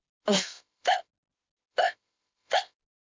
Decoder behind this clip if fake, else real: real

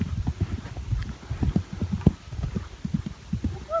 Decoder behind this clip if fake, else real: real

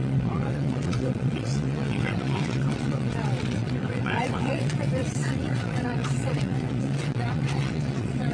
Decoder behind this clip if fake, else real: fake, vocoder, WaveNeXt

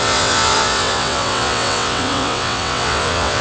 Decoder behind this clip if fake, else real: fake, vocoder, WaveNeXt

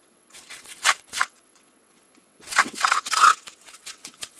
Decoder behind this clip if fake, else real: fake, vocoder, WaveNeXt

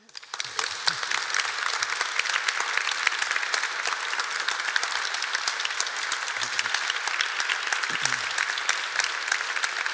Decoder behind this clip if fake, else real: real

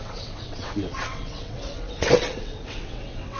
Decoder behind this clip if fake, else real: fake, vocoder, WaveNeXt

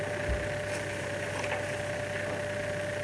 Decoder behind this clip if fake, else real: real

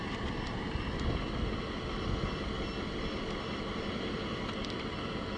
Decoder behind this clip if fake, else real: real